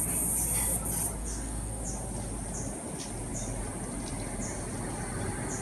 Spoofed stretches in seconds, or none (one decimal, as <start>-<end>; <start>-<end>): 1.2-1.8